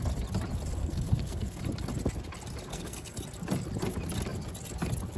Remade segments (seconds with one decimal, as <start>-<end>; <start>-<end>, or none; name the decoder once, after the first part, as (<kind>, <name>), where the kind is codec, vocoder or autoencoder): 0.8-1.6 (codec, SNAC); 2.7-3.2